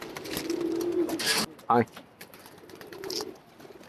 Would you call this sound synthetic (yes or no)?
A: no